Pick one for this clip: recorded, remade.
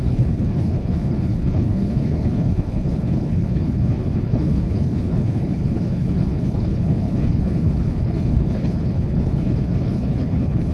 remade